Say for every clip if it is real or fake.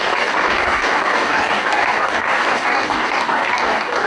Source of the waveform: fake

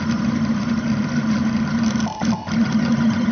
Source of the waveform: real